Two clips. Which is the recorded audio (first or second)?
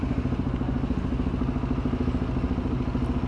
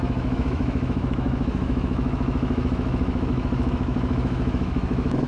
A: first